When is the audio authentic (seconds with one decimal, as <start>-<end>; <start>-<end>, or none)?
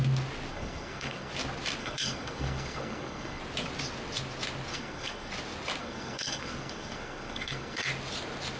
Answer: 0.0-0.5; 1.3-1.8; 3.4-4.7; 5.3-5.8; 7.9-8.6